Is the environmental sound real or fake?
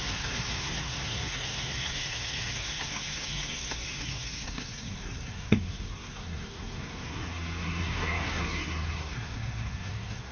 fake